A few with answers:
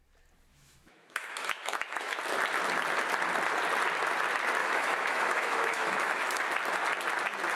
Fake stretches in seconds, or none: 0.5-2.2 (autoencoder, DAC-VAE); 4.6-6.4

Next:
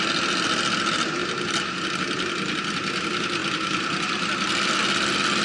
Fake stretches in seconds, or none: none

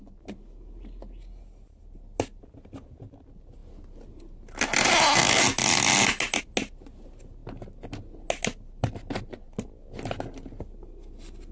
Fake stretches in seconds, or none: none